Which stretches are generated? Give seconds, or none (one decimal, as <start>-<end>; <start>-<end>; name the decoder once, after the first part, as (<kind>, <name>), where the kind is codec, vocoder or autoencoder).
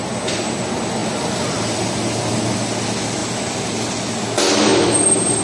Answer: none